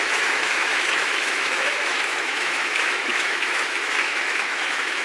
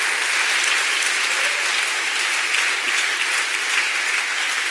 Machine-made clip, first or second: first